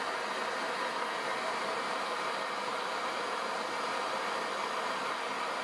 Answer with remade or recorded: recorded